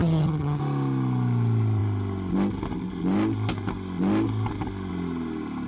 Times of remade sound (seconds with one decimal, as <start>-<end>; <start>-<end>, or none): 0.0-0.6